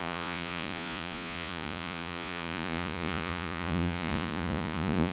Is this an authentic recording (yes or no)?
no